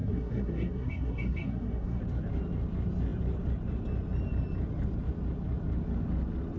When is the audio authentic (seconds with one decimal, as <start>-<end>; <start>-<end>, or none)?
2.0-6.6

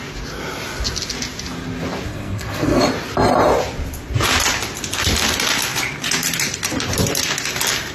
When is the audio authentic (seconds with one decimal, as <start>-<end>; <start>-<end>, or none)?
0.0-2.1; 2.8-7.9

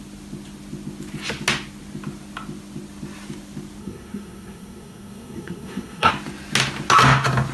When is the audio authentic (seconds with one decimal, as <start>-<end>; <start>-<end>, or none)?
0.0-3.8; 6.1-7.5

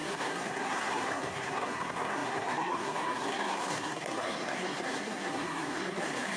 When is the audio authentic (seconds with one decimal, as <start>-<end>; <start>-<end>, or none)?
none

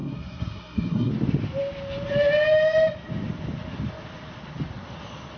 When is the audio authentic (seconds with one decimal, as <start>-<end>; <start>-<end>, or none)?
1.1-5.4

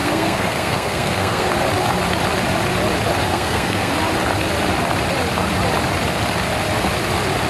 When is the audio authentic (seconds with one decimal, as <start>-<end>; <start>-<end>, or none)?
1.5-3.3; 3.9-7.5

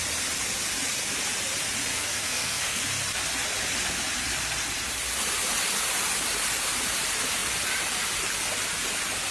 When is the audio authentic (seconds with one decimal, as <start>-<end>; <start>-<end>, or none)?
0.0-1.9; 2.8-9.3